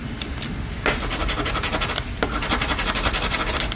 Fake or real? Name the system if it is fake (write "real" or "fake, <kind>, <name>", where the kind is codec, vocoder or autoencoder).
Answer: real